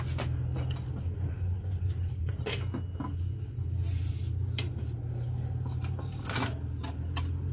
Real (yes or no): yes